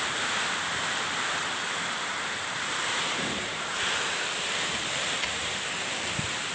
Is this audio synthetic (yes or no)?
yes